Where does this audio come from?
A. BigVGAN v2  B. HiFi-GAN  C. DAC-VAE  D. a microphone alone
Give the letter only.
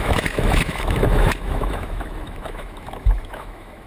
C